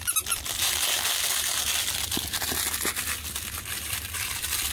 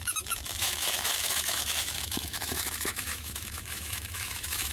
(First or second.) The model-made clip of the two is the second